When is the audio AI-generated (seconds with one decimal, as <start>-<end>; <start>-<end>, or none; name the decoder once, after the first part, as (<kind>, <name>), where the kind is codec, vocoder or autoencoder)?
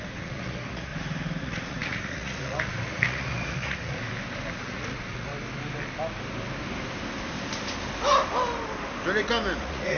0.0-0.9 (vocoder, Vocos); 1.4-4.0; 4.5-5.3; 9.6-10.0